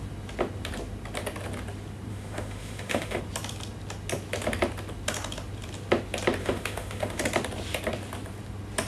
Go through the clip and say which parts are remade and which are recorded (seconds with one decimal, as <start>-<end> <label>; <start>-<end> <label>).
0.0-2.1 recorded; 2.1-3.2 remade; 3.2-6.4 recorded; 6.4-7.2 remade; 7.2-8.9 recorded